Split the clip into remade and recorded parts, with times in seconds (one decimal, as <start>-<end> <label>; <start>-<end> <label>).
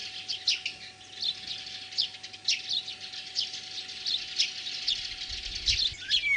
0.0-6.4 recorded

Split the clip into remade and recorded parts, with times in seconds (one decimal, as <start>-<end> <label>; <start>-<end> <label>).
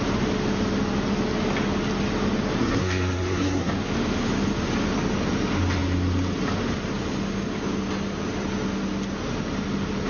0.0-2.6 recorded; 2.6-3.7 remade; 3.7-10.1 recorded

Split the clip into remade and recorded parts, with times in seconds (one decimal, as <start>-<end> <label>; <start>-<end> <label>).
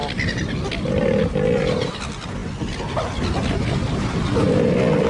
0.0-5.1 recorded